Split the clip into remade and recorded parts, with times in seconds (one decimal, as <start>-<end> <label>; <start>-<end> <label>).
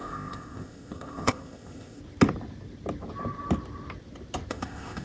0.0-2.0 remade; 2.0-4.5 recorded; 4.5-5.0 remade